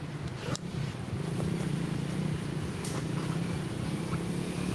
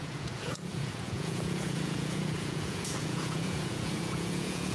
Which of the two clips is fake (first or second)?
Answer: second